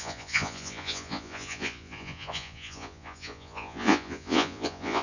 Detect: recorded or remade remade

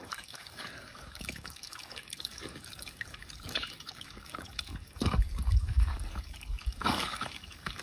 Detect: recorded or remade remade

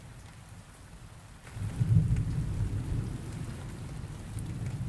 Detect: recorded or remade recorded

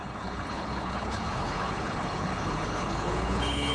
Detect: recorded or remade remade